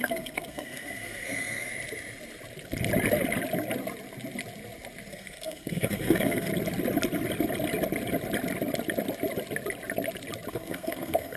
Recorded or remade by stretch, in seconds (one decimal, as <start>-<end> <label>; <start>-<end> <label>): 0.0-1.7 remade; 1.7-5.1 recorded; 5.1-6.5 remade; 6.5-10.5 recorded; 10.5-11.4 remade